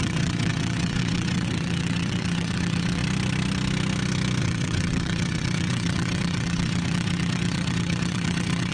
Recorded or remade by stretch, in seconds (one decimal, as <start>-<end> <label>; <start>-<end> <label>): 0.0-3.0 remade; 3.0-4.4 recorded; 4.4-8.7 remade